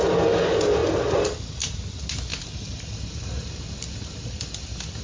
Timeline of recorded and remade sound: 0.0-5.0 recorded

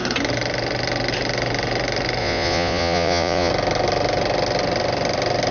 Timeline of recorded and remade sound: 0.0-2.2 recorded; 2.2-3.5 remade; 3.5-5.5 recorded

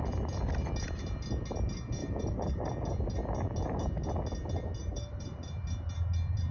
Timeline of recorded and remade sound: 0.0-2.0 recorded; 2.0-2.7 remade; 2.7-4.8 recorded; 4.8-5.4 remade; 5.4-6.5 recorded

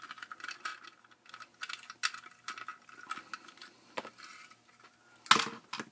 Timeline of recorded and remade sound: 0.0-5.9 recorded

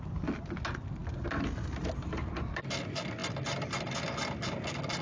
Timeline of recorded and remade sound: 0.0-5.0 recorded

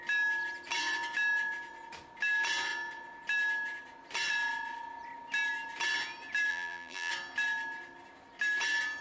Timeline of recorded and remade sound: 0.0-6.5 recorded; 6.5-7.1 remade; 7.1-9.0 recorded

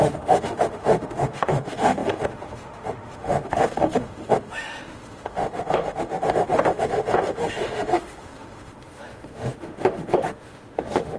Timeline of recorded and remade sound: 0.0-11.2 remade

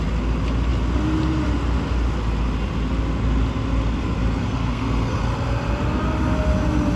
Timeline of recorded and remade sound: 0.0-4.4 recorded; 4.4-5.2 remade; 5.2-7.0 recorded